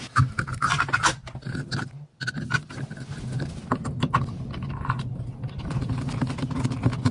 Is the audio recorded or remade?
recorded